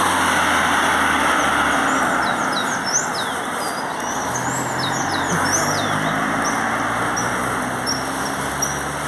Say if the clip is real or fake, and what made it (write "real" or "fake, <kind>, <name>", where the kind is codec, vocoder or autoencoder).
real